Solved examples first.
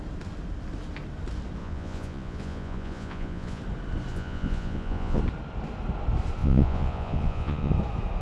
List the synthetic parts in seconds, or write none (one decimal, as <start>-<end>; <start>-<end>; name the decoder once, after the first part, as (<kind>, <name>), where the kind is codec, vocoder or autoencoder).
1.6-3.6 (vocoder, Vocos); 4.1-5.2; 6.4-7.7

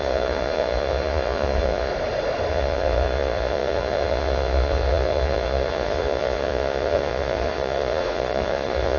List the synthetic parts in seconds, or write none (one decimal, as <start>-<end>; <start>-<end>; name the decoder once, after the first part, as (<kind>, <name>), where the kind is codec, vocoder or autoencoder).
0.0-1.9 (vocoder, Vocos); 2.5-9.0

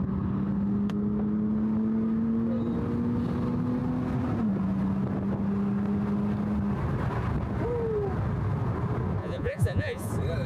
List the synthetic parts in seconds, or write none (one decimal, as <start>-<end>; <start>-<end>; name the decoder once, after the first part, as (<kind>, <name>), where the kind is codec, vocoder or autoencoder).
9.2-10.1 (vocoder, Vocos)

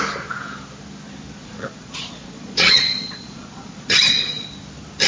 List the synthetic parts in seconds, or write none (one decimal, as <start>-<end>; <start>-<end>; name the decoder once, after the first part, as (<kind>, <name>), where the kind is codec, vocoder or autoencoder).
1.4-4.5 (vocoder, Vocos)